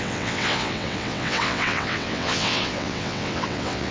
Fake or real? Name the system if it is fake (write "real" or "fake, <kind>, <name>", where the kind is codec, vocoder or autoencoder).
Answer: fake, vocoder, WaveNeXt